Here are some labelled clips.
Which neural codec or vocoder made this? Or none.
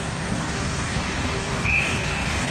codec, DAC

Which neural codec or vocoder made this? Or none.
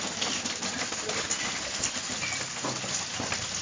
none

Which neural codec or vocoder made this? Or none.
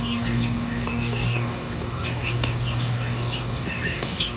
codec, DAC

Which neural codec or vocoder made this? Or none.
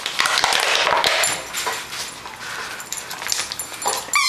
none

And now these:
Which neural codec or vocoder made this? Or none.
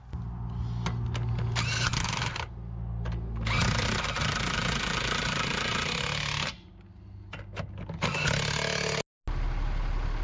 none